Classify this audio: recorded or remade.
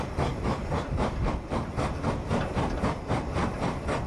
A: remade